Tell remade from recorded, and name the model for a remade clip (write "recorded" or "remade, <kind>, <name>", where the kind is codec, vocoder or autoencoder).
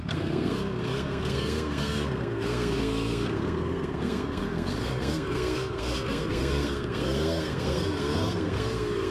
remade, codec, SNAC